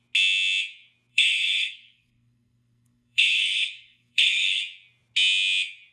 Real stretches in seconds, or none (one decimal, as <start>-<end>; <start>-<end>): 0.0-1.1; 4.6-5.9